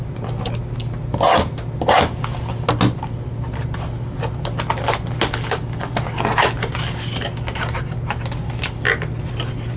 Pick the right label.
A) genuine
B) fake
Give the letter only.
A